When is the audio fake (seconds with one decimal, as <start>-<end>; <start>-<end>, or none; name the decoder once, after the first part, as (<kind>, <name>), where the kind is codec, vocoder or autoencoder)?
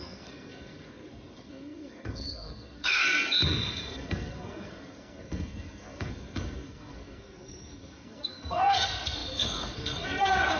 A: 0.0-10.6 (codec, SNAC)